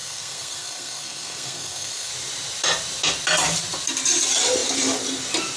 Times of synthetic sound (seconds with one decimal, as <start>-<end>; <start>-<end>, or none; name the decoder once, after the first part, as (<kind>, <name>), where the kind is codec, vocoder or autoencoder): 0.0-2.1 (codec, SNAC)

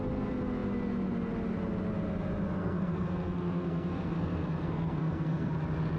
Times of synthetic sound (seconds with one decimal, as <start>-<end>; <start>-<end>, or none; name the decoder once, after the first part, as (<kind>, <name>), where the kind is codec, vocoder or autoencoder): 2.6-5.5 (codec, SNAC)